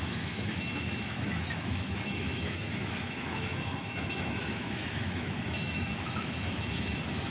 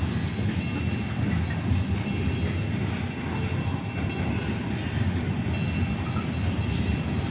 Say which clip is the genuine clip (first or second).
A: second